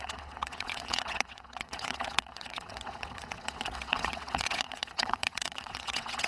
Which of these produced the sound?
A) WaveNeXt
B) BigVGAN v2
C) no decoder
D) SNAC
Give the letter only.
A